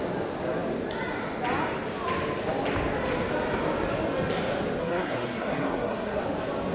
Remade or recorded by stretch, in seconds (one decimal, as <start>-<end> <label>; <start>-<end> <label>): 0.0-4.8 recorded; 4.8-6.2 remade; 6.2-6.7 recorded